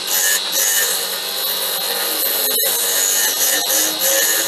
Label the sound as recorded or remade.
recorded